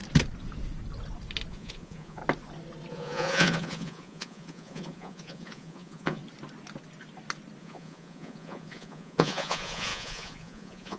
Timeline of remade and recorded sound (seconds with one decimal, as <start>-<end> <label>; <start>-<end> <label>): 0.0-1.5 recorded; 1.5-2.2 remade; 2.2-2.9 recorded; 2.9-6.2 remade; 6.2-7.6 recorded; 7.6-11.0 remade